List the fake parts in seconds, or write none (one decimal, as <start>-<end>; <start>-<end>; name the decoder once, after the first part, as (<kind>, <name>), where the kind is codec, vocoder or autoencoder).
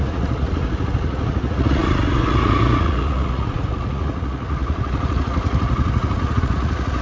0.0-7.0 (vocoder, Vocos)